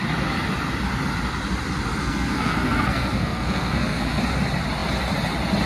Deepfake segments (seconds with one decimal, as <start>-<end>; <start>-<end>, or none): 2.0-4.2